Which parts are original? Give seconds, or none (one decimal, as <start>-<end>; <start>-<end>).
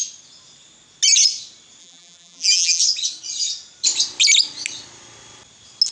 0.0-1.8; 2.8-5.9